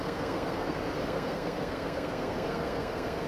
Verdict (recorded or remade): remade